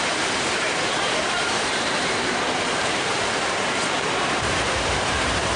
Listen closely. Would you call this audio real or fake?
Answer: fake